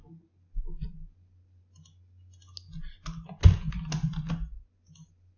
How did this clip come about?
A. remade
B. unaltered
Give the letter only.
B